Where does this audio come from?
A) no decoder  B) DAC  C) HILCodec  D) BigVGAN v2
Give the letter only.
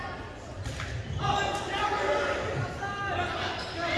A